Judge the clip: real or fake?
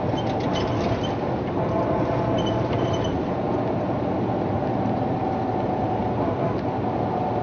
real